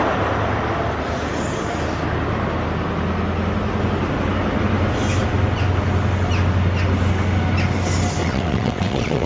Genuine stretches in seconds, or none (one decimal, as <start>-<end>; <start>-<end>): 0.0-8.2